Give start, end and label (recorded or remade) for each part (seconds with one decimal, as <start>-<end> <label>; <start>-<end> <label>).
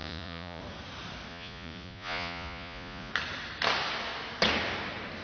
0.0-0.6 remade; 0.6-1.3 recorded; 1.3-3.1 remade; 3.1-5.2 recorded